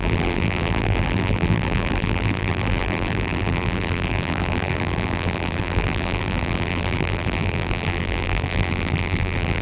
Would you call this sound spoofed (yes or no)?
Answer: yes